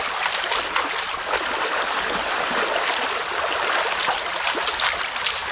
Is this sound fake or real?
real